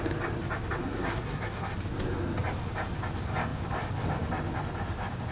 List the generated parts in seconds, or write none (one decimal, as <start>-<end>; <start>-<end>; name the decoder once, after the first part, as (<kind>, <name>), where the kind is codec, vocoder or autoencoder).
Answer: 0.8-1.7 (codec, SNAC)